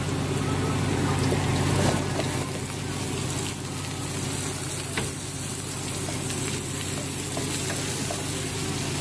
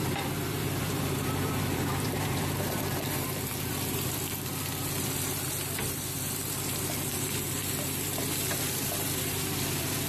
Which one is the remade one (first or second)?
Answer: second